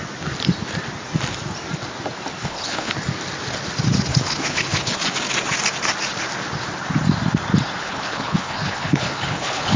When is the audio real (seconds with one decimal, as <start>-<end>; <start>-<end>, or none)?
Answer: 0.0-2.4; 2.9-4.1; 5.0-7.8